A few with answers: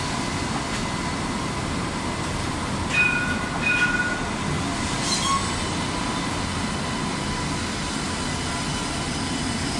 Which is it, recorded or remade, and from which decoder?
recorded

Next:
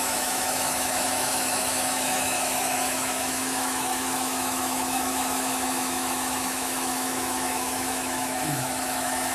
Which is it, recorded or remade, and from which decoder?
remade, autoencoder, DAC-VAE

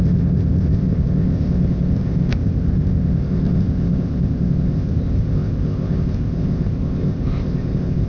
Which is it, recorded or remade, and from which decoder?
remade, codec, ZipCodec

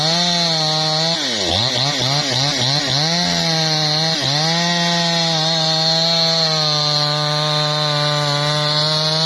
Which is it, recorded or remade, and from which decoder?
recorded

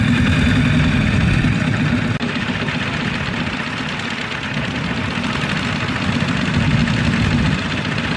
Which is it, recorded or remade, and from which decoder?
recorded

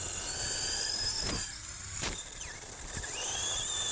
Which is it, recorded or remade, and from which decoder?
recorded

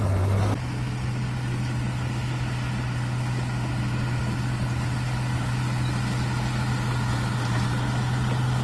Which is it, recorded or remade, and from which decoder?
recorded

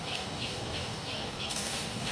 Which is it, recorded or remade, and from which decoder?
remade, codec, DAC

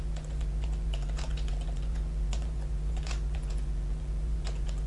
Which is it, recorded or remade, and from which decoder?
remade, vocoder, Vocos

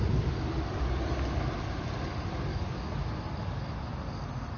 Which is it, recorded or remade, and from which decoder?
recorded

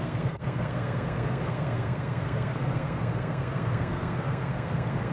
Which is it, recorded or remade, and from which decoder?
remade, codec, SNAC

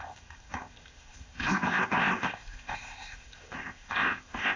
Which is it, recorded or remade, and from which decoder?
remade, codec, ZipCodec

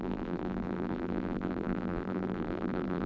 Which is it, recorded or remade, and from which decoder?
remade, vocoder, BigVGAN v2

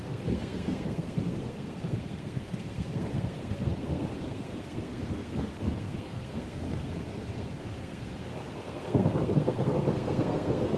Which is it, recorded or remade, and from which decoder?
remade, codec, SNAC